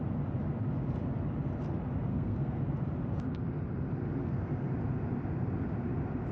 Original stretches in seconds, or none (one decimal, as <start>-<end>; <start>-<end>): 0.0-2.1; 2.6-4.2; 4.7-6.3